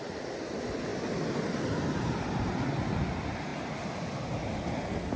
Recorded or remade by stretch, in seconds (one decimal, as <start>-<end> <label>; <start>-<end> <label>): 0.0-0.9 remade; 0.9-1.6 recorded; 1.6-3.5 remade; 3.5-4.5 recorded; 4.5-5.2 remade